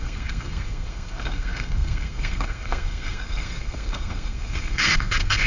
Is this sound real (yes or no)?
no